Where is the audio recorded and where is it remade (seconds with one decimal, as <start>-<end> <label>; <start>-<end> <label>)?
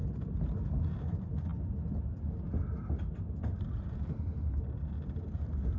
0.0-0.7 recorded; 0.7-5.8 remade